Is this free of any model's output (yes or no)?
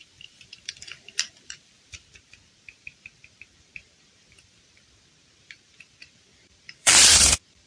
no